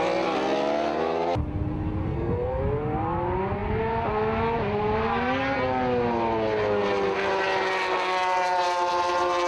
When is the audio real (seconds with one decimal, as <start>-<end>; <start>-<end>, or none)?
0.0-2.0; 2.6-9.5